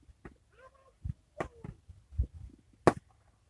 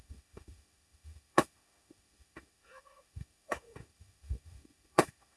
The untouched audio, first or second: first